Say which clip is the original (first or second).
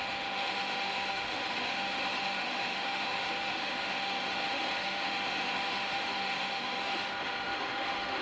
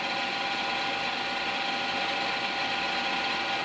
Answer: second